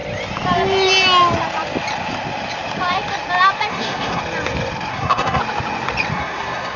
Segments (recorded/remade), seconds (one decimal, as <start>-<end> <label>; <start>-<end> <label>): 0.0-3.7 recorded; 3.7-4.2 remade; 4.2-4.9 recorded; 4.9-5.4 remade; 5.4-6.1 recorded; 6.1-6.8 remade

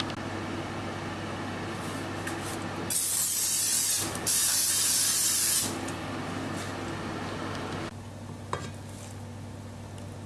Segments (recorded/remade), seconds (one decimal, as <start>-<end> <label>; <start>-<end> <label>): 0.0-10.3 recorded